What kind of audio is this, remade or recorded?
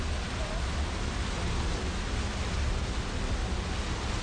recorded